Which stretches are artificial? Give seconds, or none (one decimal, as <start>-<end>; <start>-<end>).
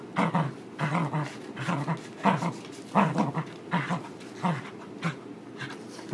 0.0-1.0; 4.7-6.1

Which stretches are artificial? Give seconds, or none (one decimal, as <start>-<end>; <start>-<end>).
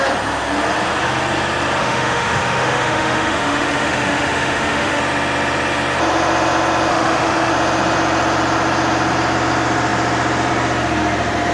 1.8-5.0; 6.9-7.5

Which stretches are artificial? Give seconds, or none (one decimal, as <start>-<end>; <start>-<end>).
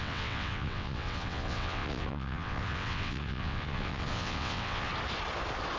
0.0-4.9